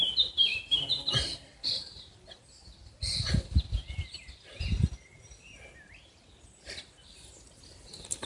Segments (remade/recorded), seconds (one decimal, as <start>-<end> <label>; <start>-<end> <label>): 0.0-1.5 recorded; 1.5-2.1 remade; 2.1-8.3 recorded